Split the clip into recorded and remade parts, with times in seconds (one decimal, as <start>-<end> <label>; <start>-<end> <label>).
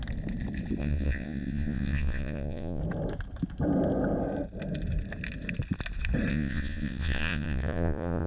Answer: 0.0-0.8 recorded; 0.8-2.8 remade; 2.8-6.3 recorded; 6.3-8.3 remade